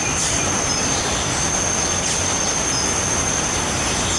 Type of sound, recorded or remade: recorded